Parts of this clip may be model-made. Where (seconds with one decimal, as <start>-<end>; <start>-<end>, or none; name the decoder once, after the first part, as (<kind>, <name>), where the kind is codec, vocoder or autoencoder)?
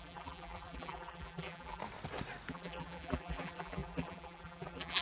0.0-1.8 (vocoder, BigVGAN v2); 2.5-5.0